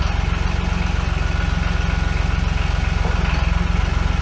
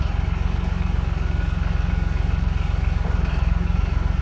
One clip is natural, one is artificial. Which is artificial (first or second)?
second